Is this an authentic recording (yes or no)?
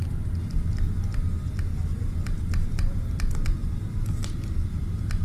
yes